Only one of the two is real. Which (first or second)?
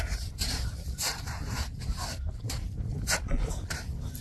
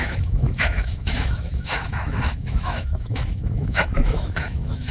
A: first